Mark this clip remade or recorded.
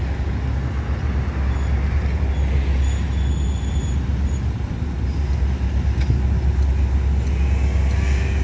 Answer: recorded